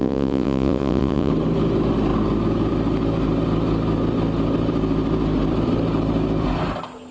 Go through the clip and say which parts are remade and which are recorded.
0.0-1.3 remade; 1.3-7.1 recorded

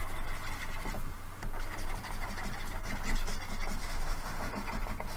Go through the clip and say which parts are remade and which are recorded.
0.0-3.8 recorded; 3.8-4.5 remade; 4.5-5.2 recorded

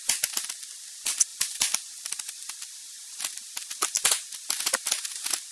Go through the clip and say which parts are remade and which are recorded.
0.0-1.3 recorded; 1.3-2.5 remade; 2.5-5.5 recorded

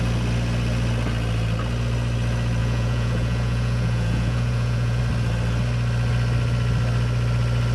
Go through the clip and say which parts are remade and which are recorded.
0.0-2.6 recorded; 2.6-5.0 remade; 5.0-7.7 recorded